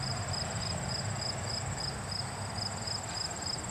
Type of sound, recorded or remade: recorded